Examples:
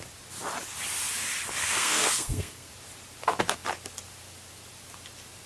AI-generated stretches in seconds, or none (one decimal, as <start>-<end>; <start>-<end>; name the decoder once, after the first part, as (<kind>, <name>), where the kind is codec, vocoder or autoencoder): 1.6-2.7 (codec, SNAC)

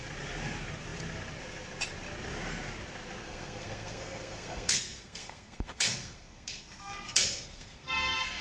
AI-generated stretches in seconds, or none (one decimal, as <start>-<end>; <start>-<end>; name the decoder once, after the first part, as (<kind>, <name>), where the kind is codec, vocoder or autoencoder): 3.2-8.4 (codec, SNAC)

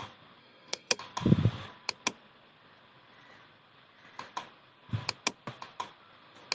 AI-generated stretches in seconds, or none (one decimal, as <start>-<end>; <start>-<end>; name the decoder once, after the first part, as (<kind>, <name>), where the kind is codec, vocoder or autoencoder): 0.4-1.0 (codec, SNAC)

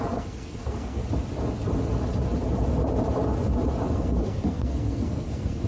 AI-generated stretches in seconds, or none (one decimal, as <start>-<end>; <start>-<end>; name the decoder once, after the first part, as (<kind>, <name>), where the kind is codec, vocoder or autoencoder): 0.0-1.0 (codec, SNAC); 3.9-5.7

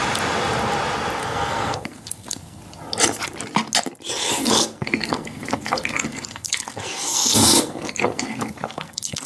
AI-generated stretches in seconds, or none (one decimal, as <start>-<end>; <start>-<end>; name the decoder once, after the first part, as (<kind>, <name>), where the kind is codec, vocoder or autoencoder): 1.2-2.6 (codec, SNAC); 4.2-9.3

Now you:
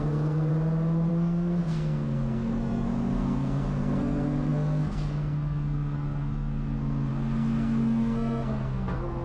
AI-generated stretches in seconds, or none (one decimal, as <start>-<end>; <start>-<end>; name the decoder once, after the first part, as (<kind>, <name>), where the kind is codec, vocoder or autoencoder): 0.0-0.5 (codec, SNAC); 1.1-9.2

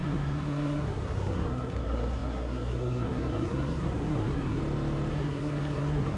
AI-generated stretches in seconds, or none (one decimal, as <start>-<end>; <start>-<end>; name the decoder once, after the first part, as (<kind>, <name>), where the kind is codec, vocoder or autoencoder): 0.0-4.6 (codec, SNAC); 5.1-6.2

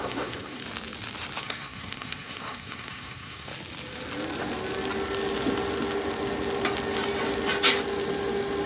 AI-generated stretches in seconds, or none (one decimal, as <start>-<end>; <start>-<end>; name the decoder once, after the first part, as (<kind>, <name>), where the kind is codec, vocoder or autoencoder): 0.0-0.6 (codec, SNAC); 1.4-3.5